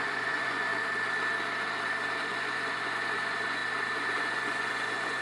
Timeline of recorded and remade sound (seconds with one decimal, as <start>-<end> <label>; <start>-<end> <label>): 0.0-0.7 remade; 0.7-2.3 recorded; 2.3-3.6 remade; 3.6-4.1 recorded; 4.1-5.2 remade